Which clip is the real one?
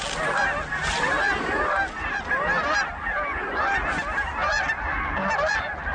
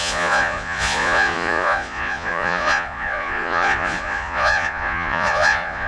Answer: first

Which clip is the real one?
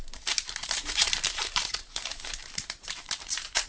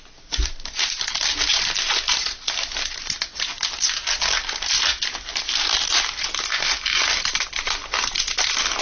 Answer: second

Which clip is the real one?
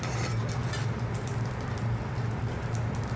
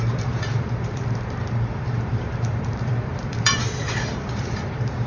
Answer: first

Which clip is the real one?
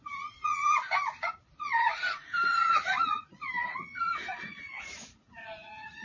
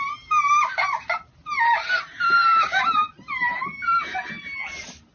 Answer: second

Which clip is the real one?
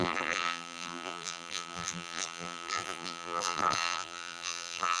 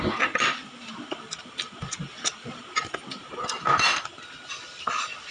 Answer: second